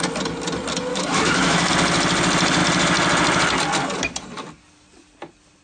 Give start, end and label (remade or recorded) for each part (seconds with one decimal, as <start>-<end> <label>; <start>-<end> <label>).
0.0-0.9 recorded; 0.9-1.7 remade; 1.7-5.6 recorded